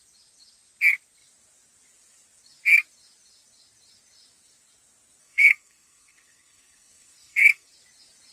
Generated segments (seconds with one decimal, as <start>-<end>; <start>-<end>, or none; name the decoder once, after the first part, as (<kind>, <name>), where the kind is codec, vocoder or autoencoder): 5.2-7.7 (codec, SNAC)